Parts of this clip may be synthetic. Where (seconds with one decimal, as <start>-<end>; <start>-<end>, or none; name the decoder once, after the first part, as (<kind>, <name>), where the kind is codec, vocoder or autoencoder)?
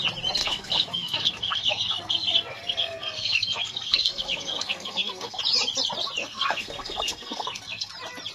0.4-5.4 (codec, SNAC); 6.2-7.9